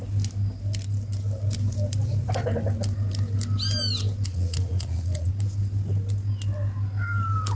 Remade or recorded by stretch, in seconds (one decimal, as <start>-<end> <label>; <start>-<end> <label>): 0.0-4.3 recorded; 4.3-5.3 remade; 5.3-7.5 recorded